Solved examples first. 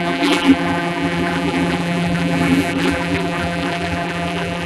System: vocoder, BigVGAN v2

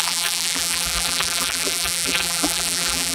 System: vocoder, BigVGAN v2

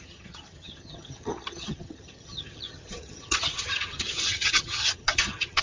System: vocoder, HiFi-GAN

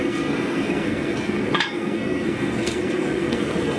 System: codec, SNAC